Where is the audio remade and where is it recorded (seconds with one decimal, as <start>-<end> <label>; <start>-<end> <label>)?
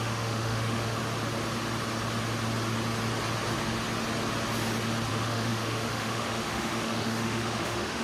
0.0-1.0 remade; 1.0-5.1 recorded; 5.1-8.0 remade